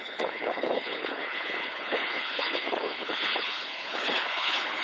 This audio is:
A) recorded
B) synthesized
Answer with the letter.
B